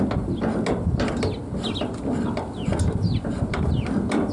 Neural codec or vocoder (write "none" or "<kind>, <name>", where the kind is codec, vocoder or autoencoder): none